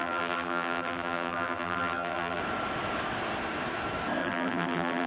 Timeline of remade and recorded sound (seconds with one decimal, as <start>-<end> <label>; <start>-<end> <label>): 0.0-2.4 remade; 2.4-4.2 recorded; 4.2-5.1 remade

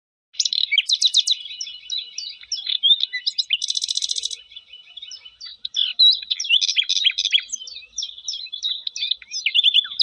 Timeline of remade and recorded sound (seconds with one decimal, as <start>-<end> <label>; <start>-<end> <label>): 0.0-10.0 recorded

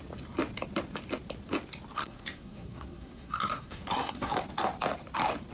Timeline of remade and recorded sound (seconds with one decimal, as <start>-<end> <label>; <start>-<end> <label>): 0.0-2.0 recorded; 2.0-4.3 remade; 4.3-5.5 recorded

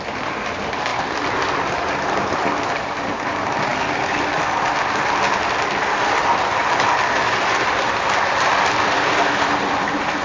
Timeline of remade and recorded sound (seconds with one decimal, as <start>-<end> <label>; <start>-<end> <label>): 0.0-0.9 remade; 0.9-1.4 recorded; 1.4-10.2 remade

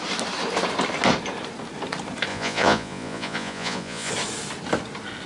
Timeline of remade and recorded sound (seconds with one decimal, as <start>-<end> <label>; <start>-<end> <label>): 0.0-2.3 recorded; 2.3-4.1 remade; 4.1-5.3 recorded

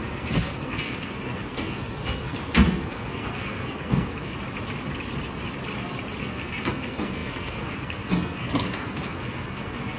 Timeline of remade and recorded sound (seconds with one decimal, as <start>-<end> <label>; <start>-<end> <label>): 0.0-4.3 remade; 4.3-6.2 recorded; 6.2-10.0 remade

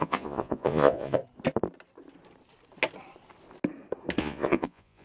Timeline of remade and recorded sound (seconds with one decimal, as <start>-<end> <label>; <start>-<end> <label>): 0.0-1.2 remade; 1.2-4.2 recorded; 4.2-5.0 remade